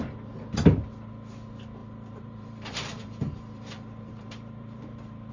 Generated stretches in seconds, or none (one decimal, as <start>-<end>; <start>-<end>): 1.8-5.3